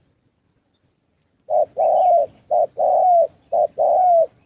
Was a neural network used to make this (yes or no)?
no